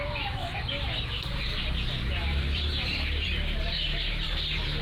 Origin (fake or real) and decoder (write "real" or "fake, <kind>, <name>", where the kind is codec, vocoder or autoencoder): fake, vocoder, BigVGAN v2